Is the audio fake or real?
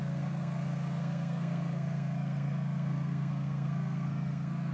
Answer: fake